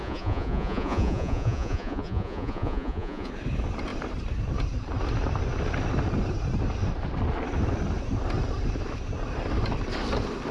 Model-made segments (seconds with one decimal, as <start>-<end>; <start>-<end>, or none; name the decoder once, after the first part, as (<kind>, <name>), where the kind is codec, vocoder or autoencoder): 0.0-3.3 (vocoder, Vocos)